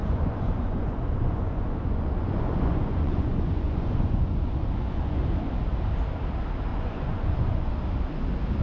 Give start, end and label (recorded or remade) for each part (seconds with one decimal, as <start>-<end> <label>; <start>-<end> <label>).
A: 0.0-5.2 remade; 5.2-6.7 recorded; 6.7-7.7 remade; 7.7-8.6 recorded